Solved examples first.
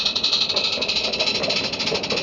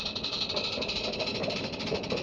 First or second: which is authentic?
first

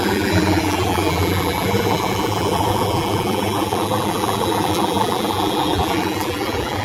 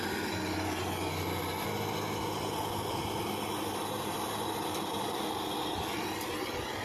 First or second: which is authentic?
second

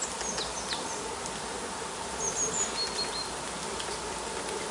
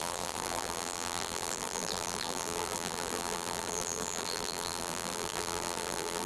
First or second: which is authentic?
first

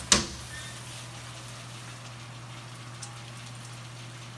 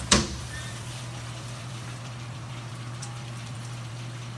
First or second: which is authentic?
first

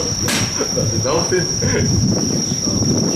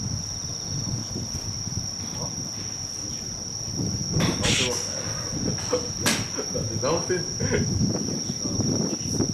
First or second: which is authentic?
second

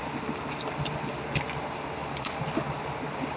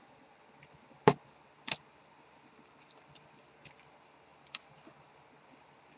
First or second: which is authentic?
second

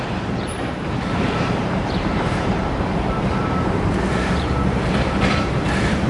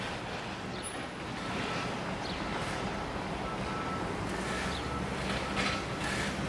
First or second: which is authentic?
second